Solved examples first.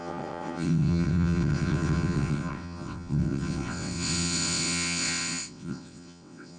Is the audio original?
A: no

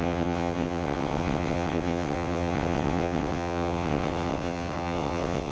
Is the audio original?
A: no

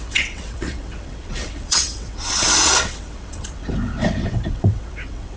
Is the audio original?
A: no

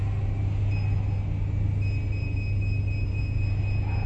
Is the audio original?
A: yes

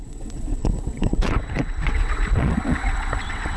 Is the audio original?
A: no